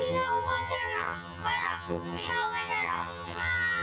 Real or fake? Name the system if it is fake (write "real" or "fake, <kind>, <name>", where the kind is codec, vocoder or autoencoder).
fake, vocoder, HiFi-GAN